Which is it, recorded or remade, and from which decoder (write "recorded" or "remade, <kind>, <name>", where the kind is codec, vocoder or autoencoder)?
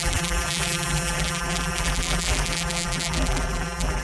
remade, vocoder, BigVGAN v2